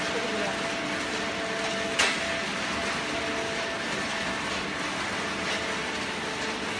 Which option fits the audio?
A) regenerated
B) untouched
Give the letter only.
B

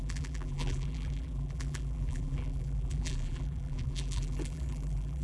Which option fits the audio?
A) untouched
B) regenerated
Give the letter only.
B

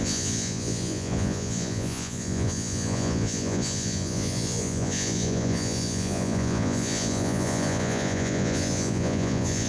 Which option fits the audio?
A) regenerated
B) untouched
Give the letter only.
A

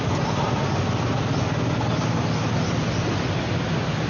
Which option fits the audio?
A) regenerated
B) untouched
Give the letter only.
B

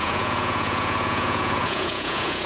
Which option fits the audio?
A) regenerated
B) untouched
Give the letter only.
A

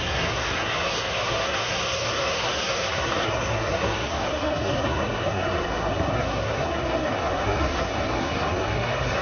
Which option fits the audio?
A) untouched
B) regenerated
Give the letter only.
B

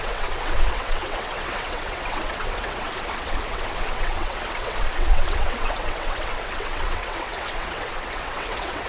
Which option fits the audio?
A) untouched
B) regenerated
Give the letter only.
B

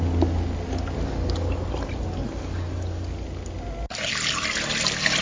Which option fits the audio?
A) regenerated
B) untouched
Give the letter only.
B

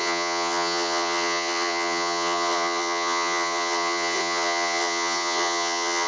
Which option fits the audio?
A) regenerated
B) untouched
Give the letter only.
A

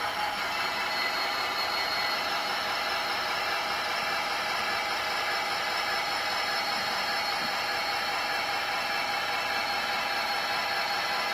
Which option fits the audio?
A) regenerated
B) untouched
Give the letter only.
A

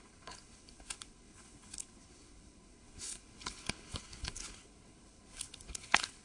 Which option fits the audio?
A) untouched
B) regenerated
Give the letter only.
B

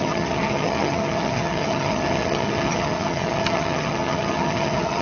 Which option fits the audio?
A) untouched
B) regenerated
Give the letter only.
B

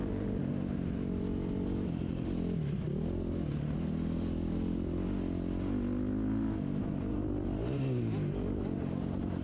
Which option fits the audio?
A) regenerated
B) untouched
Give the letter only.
B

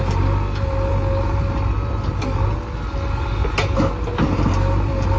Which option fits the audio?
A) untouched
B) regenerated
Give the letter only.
A